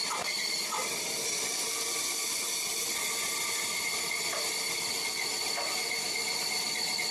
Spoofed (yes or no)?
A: no